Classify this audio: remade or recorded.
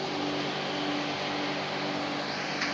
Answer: recorded